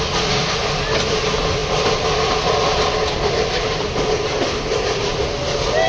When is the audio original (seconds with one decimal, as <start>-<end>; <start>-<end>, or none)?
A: 0.0-5.9